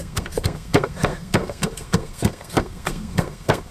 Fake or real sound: fake